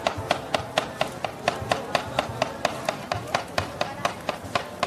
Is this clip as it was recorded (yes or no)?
yes